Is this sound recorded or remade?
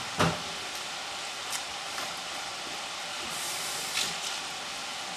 recorded